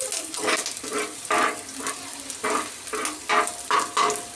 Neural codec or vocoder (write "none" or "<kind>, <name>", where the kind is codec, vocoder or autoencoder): none